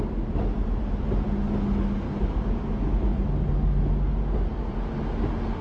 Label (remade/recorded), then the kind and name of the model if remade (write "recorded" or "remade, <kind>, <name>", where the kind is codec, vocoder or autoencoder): recorded